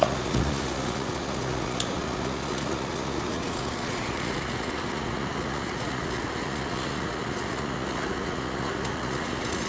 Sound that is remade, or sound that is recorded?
remade